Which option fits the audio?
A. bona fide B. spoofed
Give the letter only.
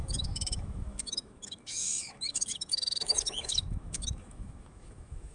B